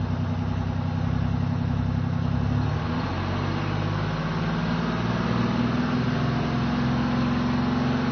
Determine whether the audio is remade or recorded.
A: recorded